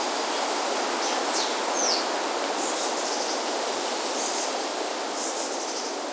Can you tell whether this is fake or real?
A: real